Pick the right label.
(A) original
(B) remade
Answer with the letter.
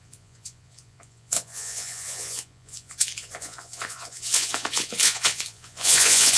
B